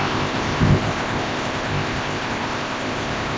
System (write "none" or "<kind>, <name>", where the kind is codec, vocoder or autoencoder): codec, ZipCodec